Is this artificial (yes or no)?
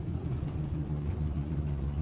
yes